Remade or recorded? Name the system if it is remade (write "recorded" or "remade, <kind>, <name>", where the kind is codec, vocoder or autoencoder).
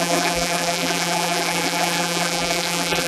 remade, vocoder, BigVGAN v2